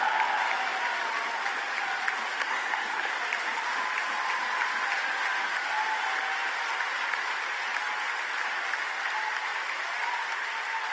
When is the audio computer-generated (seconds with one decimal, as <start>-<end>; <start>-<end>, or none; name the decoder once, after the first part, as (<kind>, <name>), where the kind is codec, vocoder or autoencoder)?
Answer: 2.4-3.2 (codec, SNAC)